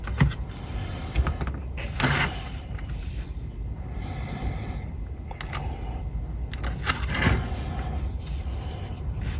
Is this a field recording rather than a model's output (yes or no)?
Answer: yes